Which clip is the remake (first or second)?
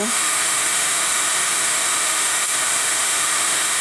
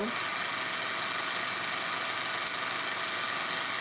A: first